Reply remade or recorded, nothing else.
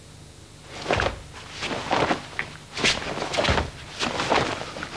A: recorded